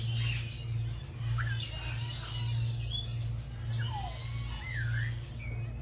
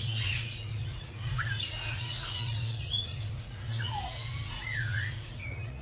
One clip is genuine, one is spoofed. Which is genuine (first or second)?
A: first